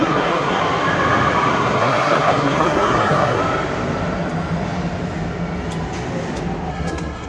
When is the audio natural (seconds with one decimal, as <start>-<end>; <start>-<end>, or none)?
0.6-1.5; 3.4-6.7